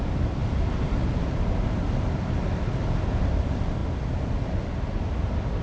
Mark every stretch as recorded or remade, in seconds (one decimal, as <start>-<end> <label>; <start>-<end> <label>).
0.0-5.6 recorded